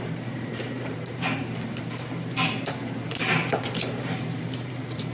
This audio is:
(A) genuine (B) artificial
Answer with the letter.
B